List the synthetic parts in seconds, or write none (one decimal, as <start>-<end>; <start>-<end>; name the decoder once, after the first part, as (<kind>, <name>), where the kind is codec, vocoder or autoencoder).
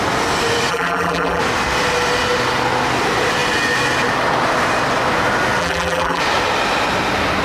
0.7-1.4 (vocoder, BigVGAN v2); 5.6-6.2